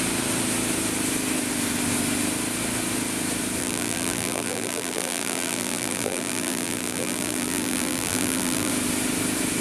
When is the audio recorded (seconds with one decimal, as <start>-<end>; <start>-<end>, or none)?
0.0-3.6; 8.7-9.6